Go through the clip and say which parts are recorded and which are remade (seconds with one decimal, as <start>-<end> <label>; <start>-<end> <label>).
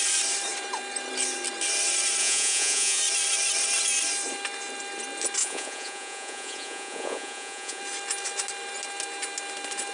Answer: 0.0-2.2 recorded; 2.2-3.0 remade; 3.0-5.4 recorded; 5.4-7.8 remade; 7.8-9.9 recorded